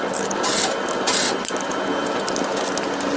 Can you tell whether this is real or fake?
real